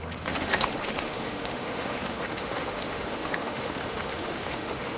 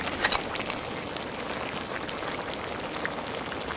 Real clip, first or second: second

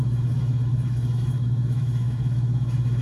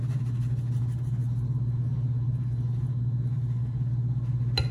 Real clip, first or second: second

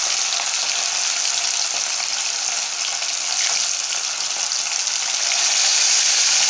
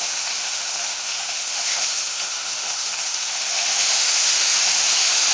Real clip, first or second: first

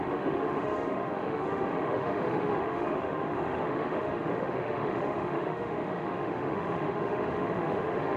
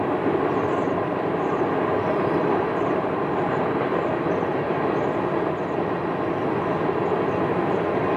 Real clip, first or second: second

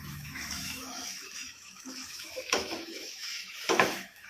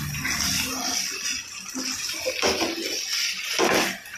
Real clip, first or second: second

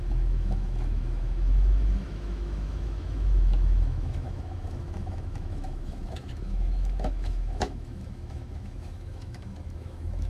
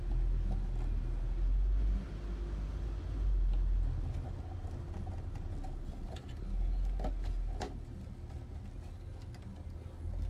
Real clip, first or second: second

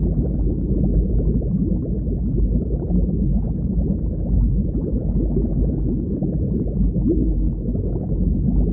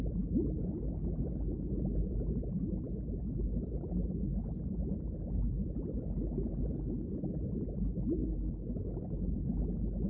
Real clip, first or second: second